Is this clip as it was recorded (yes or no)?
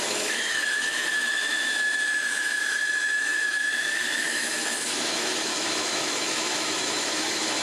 no